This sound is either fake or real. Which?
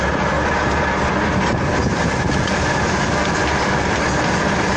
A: real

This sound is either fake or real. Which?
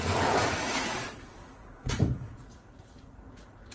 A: fake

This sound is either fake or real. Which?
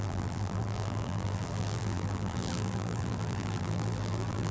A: fake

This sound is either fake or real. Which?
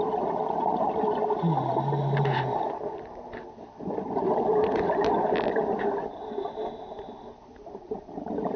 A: real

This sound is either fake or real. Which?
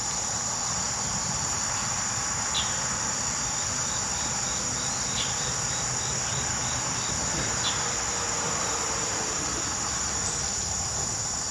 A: fake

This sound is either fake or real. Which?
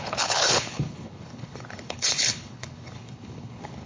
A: fake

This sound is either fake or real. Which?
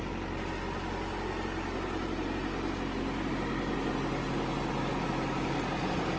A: real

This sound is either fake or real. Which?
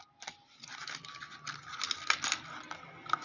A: real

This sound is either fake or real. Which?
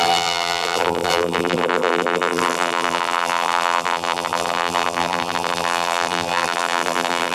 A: fake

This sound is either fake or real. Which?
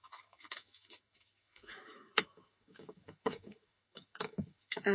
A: fake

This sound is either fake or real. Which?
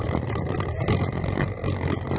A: real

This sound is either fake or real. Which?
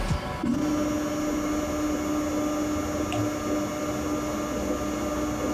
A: real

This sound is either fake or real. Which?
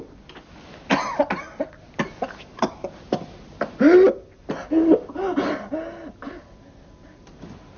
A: real